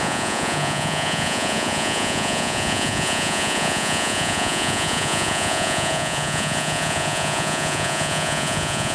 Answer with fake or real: fake